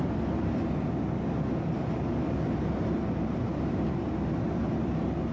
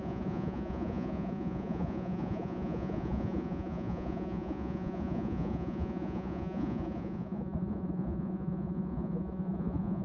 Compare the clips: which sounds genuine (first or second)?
first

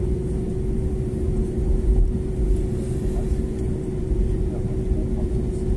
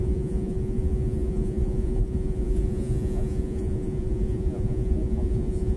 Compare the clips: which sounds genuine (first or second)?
first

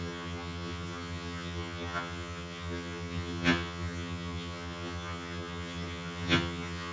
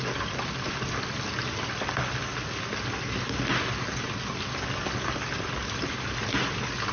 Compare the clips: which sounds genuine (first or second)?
second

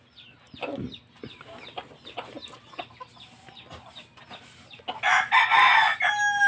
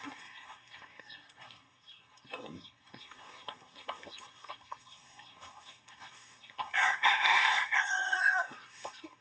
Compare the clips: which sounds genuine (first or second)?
first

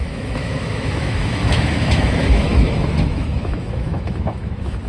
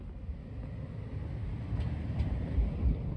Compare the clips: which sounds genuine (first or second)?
second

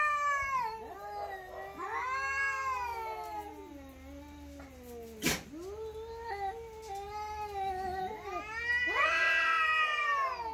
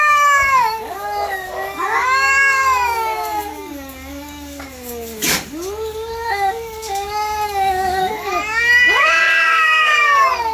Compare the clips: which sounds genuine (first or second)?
first